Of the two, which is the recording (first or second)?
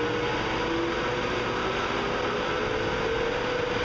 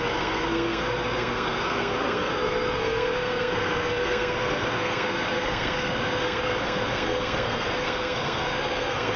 first